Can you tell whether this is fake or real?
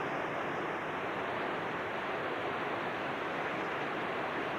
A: real